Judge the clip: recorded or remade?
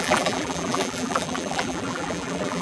remade